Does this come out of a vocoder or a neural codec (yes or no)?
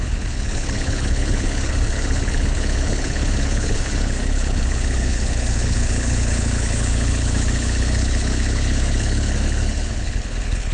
yes